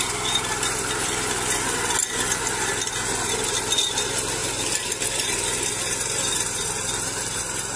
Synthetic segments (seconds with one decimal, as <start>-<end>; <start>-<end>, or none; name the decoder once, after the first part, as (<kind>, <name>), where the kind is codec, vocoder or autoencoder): none